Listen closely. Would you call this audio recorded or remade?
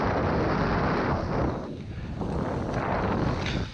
recorded